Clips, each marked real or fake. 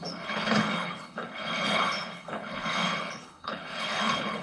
fake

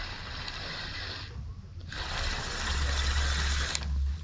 real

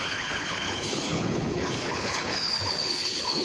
fake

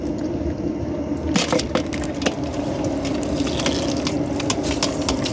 real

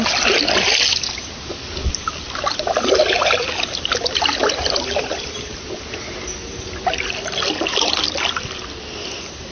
real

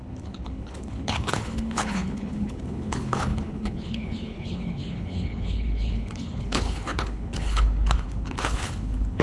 fake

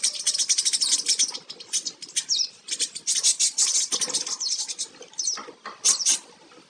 real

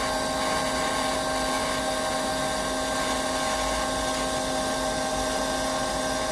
real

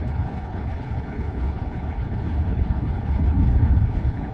fake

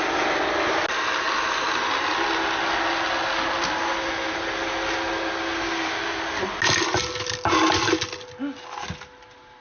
real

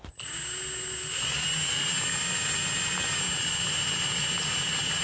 real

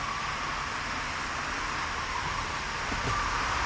real